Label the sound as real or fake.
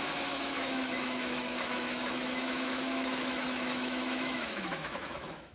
fake